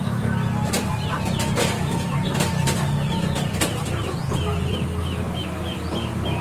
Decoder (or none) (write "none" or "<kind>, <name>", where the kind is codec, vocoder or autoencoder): none